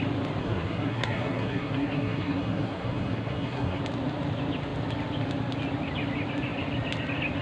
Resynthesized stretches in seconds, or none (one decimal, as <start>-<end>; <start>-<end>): 0.4-3.8